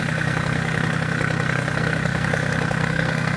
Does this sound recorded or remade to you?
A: remade